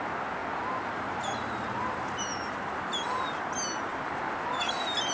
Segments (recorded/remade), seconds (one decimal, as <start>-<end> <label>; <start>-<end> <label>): 0.0-0.4 recorded; 0.4-3.5 remade; 3.5-3.9 recorded; 3.9-4.6 remade; 4.6-5.1 recorded

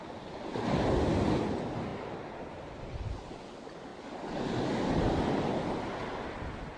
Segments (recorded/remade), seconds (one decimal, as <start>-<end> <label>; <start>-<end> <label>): 0.0-6.8 recorded

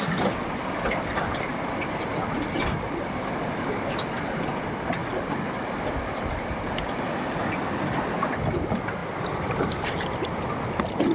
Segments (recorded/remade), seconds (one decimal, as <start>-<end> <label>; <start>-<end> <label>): 0.0-9.0 recorded; 9.0-9.9 remade; 9.9-11.1 recorded

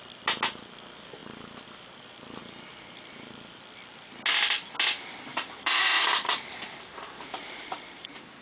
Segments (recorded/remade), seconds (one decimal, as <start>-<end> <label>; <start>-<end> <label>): 0.0-5.3 recorded; 5.3-8.4 remade